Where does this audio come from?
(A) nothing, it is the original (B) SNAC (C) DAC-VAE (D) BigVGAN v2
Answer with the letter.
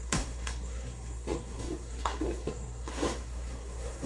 B